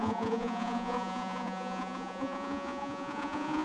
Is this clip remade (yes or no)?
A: yes